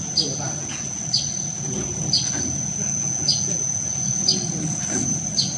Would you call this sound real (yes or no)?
yes